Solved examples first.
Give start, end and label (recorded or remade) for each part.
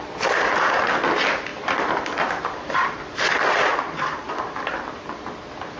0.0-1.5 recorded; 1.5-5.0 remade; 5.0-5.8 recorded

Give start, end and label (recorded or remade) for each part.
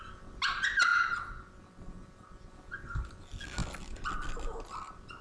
0.0-5.2 recorded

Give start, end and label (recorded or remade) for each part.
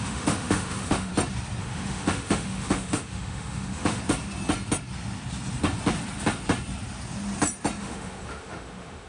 0.0-1.1 remade; 1.1-1.6 recorded; 1.6-4.0 remade; 4.0-7.8 recorded; 7.8-9.1 remade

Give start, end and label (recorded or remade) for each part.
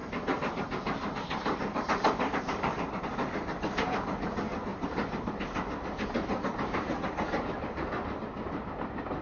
0.0-3.0 remade; 3.0-4.7 recorded; 4.7-5.3 remade; 5.3-9.2 recorded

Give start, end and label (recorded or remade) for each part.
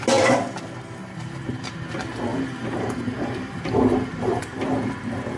0.0-1.0 recorded; 1.0-1.9 remade; 1.9-2.3 recorded; 2.3-4.5 remade; 4.5-5.4 recorded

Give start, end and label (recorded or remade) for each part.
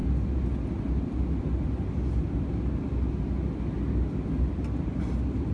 0.0-5.5 recorded